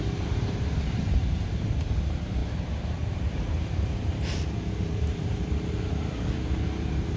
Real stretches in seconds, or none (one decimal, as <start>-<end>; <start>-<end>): none